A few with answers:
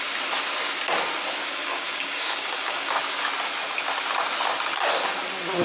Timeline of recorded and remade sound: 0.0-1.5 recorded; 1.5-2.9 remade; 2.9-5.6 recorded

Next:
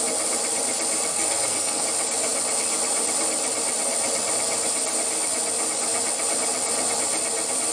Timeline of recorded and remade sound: 0.0-1.1 recorded; 1.1-1.8 remade; 1.8-7.7 recorded

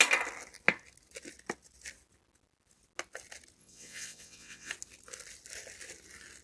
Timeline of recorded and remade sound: 0.0-3.6 recorded; 3.6-4.7 remade; 4.7-6.4 recorded

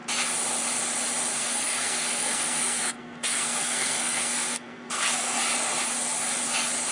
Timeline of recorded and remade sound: 0.0-1.3 recorded; 1.3-5.4 remade; 5.4-6.9 recorded

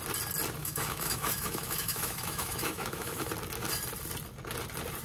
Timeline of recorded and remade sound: 0.0-0.6 recorded; 0.6-3.3 remade; 3.3-5.0 recorded